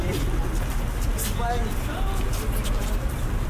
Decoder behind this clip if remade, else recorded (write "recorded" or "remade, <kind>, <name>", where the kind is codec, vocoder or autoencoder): recorded